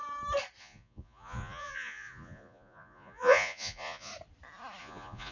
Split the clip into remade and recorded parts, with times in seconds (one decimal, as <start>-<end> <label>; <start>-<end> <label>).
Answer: 0.0-0.6 recorded; 0.6-4.1 remade; 4.1-4.8 recorded; 4.8-5.3 remade